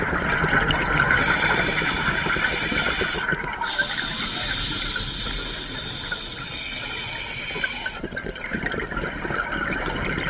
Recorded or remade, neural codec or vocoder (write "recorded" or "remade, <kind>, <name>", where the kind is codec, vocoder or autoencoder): recorded